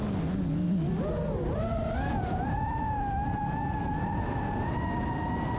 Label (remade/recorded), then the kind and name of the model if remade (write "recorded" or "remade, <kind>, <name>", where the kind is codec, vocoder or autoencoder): recorded